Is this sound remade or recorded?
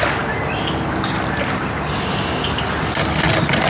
recorded